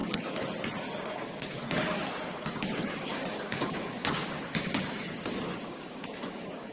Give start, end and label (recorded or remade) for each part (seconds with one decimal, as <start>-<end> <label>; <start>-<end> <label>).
0.0-1.0 recorded; 1.0-6.7 remade